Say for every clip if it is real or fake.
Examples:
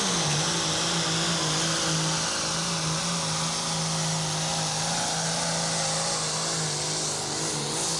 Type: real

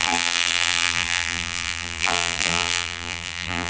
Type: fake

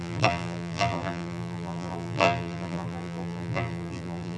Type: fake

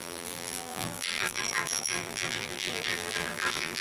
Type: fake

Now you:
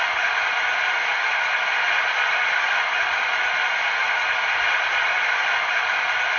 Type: real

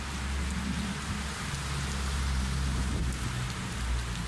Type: real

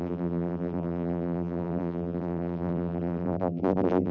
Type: fake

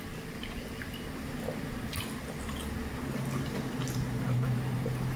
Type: real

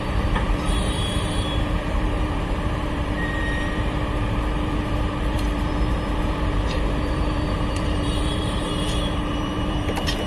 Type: fake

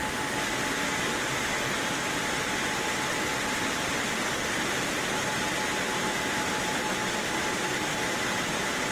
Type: real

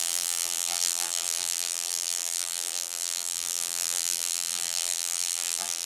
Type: fake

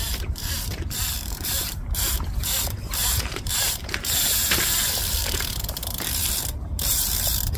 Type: fake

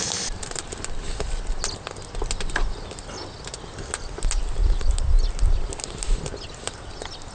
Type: real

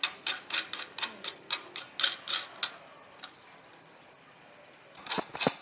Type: real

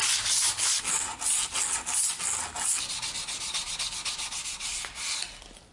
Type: real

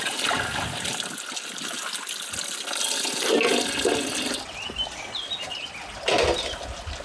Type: real